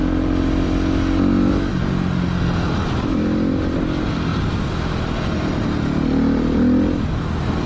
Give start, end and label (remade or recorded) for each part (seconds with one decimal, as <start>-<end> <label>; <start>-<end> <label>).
0.0-7.7 recorded